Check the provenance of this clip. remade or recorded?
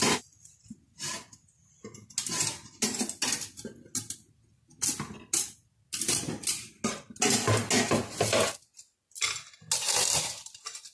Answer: recorded